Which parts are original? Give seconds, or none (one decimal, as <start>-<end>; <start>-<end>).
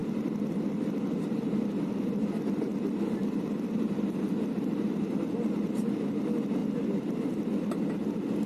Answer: 0.0-2.7; 5.8-6.6; 7.2-8.5